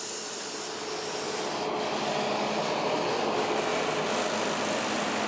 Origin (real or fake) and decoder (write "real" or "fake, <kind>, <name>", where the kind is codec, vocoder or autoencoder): real